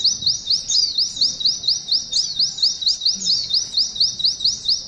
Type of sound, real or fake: real